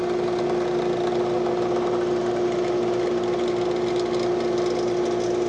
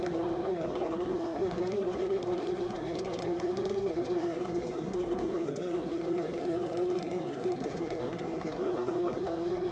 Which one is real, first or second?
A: first